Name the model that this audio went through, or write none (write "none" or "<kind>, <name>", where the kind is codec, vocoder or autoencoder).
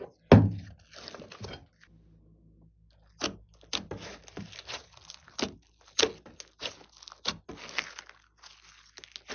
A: none